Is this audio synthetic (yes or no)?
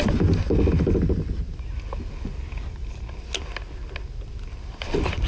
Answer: no